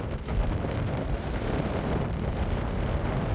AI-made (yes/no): yes